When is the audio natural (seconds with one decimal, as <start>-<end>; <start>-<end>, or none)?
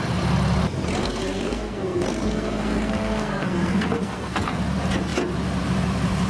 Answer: 0.0-1.0; 4.6-6.3